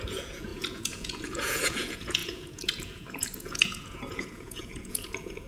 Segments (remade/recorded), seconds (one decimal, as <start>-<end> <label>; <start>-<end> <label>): 0.0-5.5 remade